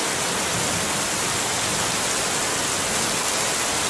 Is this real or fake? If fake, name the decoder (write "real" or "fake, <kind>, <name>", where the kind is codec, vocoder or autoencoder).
real